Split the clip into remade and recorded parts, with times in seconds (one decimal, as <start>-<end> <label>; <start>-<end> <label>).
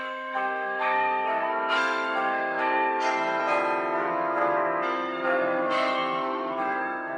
0.0-3.4 remade; 3.4-4.1 recorded; 4.1-7.2 remade